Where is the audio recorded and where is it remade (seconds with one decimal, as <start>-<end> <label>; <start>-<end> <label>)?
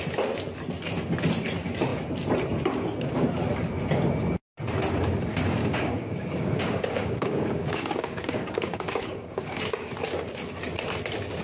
0.0-5.6 recorded; 5.6-9.6 remade; 9.6-11.4 recorded